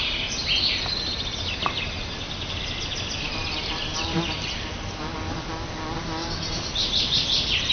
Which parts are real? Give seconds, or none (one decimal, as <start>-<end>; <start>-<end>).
0.0-3.3; 5.1-6.2